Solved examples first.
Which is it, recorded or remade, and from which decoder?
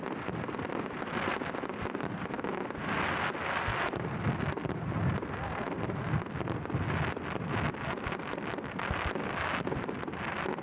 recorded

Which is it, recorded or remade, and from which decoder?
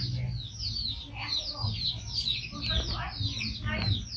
recorded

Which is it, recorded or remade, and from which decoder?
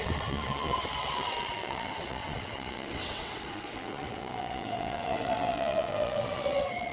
remade, vocoder, WaveNeXt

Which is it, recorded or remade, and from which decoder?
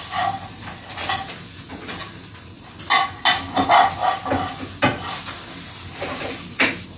recorded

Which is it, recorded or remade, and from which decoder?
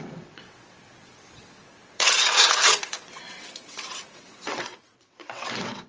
remade, vocoder, WaveNeXt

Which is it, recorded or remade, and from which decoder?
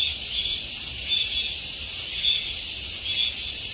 recorded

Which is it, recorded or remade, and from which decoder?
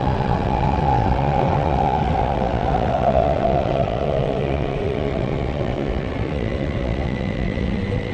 remade, vocoder, WaveNeXt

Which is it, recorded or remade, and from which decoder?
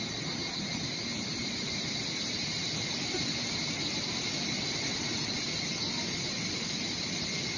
recorded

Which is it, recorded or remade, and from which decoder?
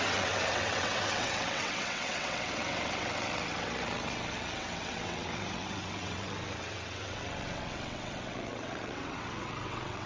remade, vocoder, WaveNeXt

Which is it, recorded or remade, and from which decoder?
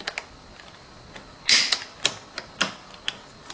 recorded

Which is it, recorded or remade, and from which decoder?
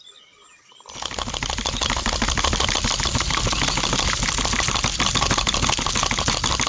recorded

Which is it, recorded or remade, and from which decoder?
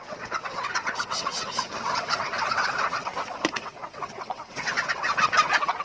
remade, vocoder, WaveNeXt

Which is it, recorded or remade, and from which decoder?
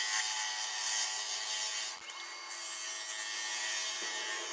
recorded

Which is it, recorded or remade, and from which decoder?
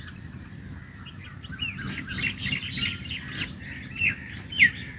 recorded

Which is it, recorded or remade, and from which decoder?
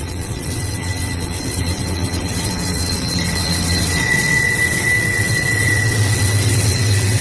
remade, vocoder, WaveNeXt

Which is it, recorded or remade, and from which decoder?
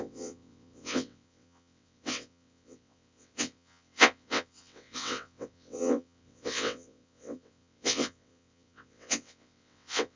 remade, vocoder, WaveNeXt